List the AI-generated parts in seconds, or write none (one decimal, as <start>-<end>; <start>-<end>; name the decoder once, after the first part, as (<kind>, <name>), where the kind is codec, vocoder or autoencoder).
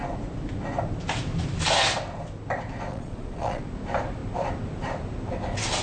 2.9-3.6 (vocoder, Vocos)